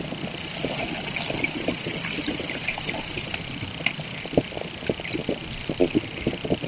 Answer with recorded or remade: recorded